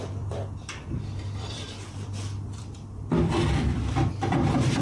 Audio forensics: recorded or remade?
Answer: remade